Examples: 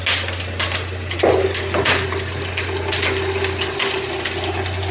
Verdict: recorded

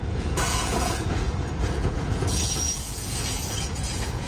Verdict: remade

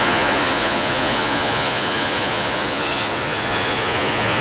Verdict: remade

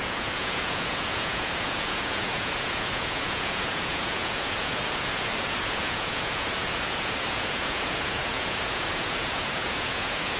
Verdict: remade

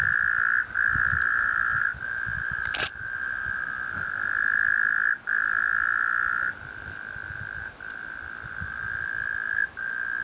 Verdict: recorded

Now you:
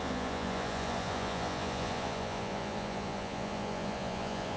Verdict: remade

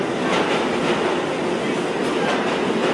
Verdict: recorded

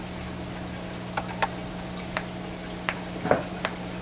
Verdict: recorded